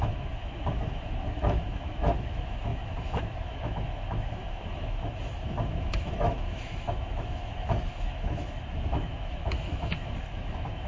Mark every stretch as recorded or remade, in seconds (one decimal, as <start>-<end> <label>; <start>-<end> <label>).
0.0-10.9 remade